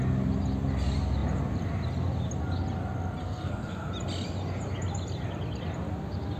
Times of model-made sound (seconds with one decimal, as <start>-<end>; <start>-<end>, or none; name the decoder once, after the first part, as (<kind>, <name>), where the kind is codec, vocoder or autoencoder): 3.2-3.9 (codec, SNAC)